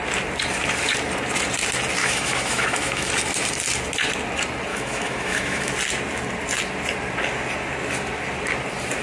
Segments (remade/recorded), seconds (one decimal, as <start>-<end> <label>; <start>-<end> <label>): 0.0-2.0 recorded; 2.0-3.1 remade; 3.1-4.7 recorded; 4.7-5.7 remade; 5.7-9.0 recorded